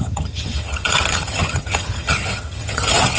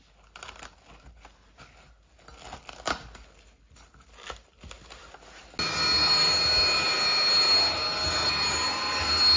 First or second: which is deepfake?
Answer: first